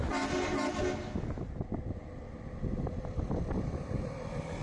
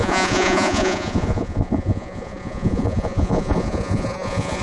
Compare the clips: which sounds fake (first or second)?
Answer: second